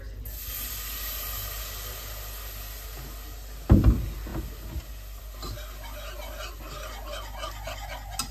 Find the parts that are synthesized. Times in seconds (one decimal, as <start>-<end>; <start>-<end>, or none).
none

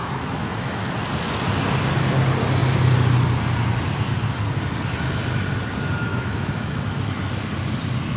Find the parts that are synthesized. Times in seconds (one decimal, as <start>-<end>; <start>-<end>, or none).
0.0-0.8; 6.1-7.1

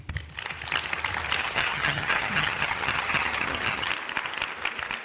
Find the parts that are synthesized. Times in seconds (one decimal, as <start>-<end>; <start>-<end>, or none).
1.4-3.9

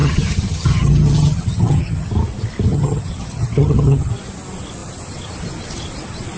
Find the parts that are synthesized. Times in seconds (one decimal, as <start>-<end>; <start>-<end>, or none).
0.0-2.1; 2.7-4.1

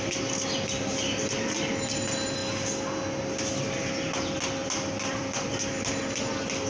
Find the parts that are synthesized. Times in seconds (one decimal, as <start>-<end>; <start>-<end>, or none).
4.6-5.7

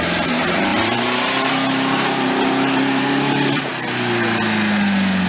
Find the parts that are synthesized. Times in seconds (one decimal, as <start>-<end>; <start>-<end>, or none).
0.0-3.7